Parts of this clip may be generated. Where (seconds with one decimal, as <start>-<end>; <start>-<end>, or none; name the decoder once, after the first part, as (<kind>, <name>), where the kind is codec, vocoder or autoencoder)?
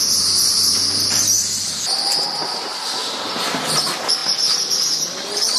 none